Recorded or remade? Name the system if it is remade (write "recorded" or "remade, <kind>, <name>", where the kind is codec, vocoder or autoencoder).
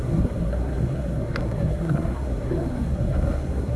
remade, codec, SNAC